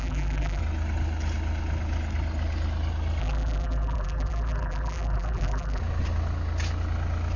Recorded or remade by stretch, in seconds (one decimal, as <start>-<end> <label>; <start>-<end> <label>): 0.0-0.6 remade; 0.6-3.2 recorded; 3.2-5.8 remade; 5.8-7.4 recorded